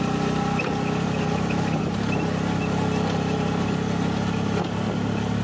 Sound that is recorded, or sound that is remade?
recorded